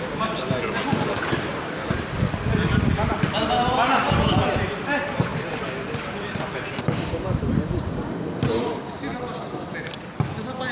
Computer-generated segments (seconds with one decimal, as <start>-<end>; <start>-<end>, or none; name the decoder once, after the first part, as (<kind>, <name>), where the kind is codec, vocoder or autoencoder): none